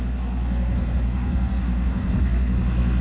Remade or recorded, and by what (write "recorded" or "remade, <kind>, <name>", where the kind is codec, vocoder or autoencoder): remade, codec, SNAC